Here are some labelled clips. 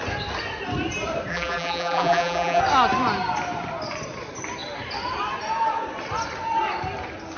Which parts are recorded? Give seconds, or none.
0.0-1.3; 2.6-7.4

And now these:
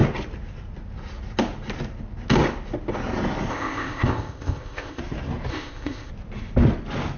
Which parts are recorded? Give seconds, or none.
0.0-3.5; 5.0-5.5; 6.1-7.2

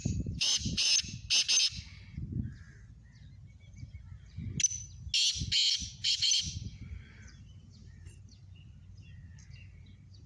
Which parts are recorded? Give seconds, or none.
0.9-3.5; 4.4-5.7

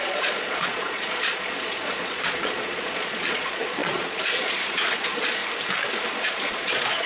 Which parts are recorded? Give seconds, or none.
5.4-6.1

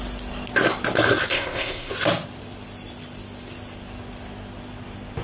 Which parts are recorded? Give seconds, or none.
0.0-1.3; 1.9-5.2

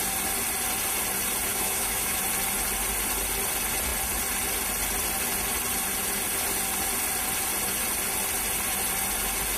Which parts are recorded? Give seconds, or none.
0.0-1.5; 2.2-9.6

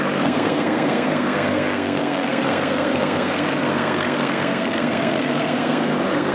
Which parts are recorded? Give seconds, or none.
none

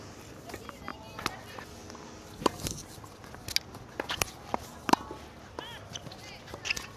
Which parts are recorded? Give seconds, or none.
0.0-7.0